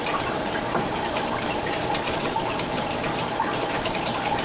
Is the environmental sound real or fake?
fake